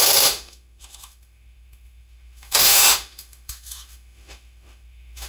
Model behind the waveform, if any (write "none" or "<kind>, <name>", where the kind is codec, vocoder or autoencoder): autoencoder, DAC-VAE